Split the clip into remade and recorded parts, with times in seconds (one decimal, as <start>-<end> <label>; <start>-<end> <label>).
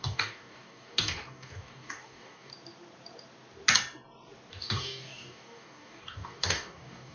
0.0-2.5 remade; 2.5-4.5 recorded; 4.5-7.1 remade